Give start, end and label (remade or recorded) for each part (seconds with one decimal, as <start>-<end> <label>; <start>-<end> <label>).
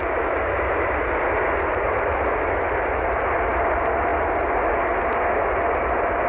0.0-6.3 recorded